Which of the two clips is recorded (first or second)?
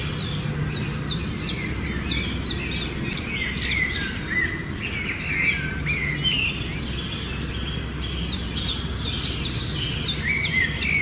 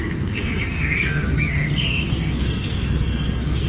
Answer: first